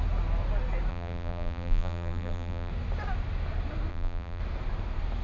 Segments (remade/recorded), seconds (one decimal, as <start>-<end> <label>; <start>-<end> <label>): 0.0-0.9 recorded; 0.9-2.7 remade; 2.7-3.9 recorded; 3.9-4.4 remade; 4.4-5.2 recorded